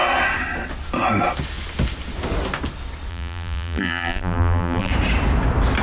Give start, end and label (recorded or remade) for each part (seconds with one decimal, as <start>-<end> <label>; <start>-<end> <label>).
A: 0.0-3.1 recorded; 3.1-4.9 remade; 4.9-5.8 recorded